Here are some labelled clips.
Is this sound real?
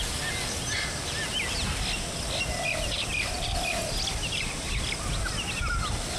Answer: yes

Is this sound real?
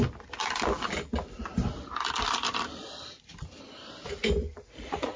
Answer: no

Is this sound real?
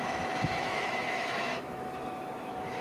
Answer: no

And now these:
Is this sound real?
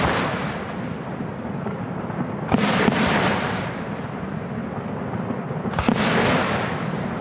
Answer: yes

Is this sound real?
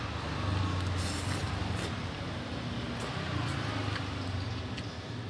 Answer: yes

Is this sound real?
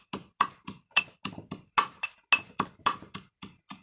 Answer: yes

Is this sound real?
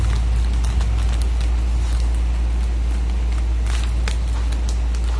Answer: yes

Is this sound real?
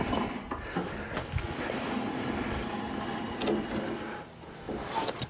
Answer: yes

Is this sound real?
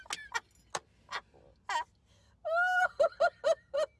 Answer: yes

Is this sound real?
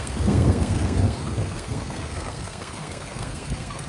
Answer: no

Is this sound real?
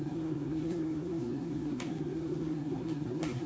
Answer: no